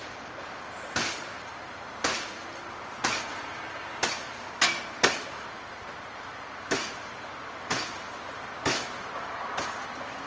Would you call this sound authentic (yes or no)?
yes